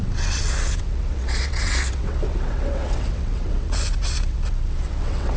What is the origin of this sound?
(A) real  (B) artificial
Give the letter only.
B